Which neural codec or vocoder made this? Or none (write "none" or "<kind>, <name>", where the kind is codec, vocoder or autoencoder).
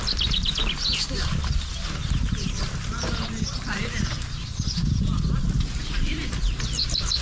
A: none